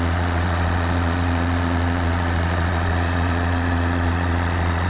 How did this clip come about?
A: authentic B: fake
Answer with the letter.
B